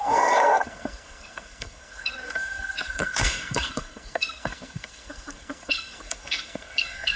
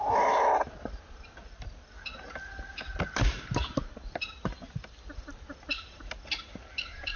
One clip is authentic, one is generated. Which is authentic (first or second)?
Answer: second